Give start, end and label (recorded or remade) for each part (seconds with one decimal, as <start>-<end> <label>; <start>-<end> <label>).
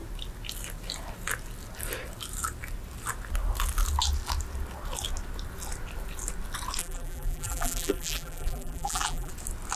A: 0.0-6.8 recorded; 6.8-9.3 remade; 9.3-9.8 recorded